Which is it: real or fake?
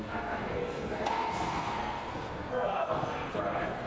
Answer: fake